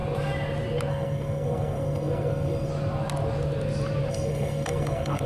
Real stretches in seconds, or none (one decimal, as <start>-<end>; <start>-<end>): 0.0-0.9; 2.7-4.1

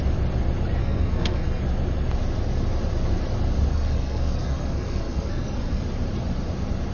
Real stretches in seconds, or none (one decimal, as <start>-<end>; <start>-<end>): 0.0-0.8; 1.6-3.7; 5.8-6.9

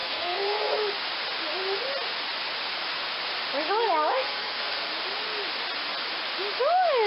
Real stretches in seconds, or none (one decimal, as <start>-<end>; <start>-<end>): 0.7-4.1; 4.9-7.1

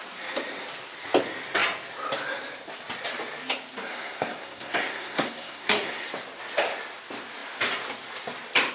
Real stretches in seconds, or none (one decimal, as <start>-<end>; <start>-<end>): 0.0-3.9; 6.1-8.7